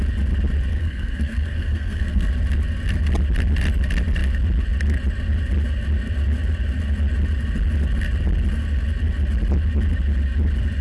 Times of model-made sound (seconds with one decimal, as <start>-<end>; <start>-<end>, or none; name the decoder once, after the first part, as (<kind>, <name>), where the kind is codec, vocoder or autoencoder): 0.7-2.3 (codec, SNAC)